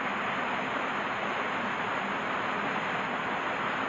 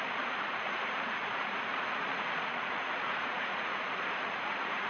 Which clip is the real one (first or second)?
first